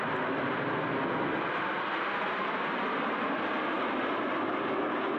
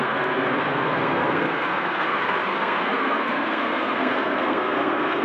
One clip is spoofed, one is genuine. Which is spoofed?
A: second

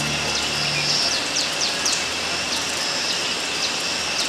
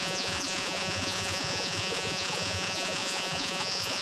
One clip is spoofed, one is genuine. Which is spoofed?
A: second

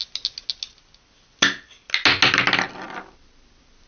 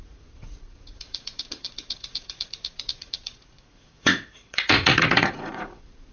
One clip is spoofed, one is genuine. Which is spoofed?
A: second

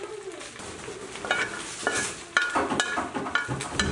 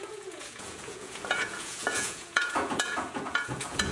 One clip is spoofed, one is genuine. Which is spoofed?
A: second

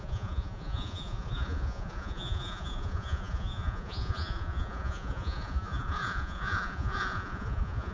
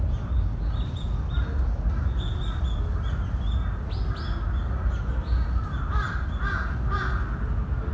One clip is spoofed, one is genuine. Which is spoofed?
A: first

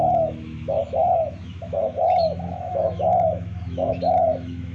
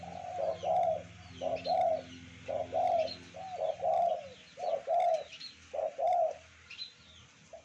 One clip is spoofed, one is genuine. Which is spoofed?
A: first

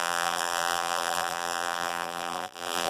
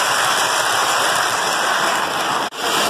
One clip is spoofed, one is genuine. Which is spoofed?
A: first